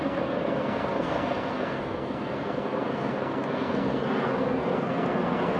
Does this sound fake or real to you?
fake